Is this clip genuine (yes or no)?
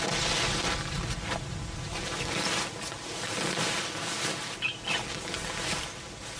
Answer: yes